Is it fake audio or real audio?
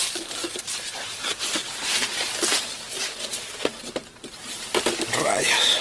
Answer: real